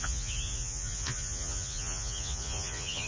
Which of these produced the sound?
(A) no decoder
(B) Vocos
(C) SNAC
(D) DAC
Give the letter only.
B